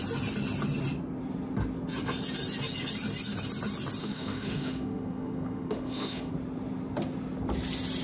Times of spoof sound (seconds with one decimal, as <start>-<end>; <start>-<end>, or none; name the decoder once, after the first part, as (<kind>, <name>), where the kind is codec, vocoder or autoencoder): 4.0-6.3 (autoencoder, DAC-VAE)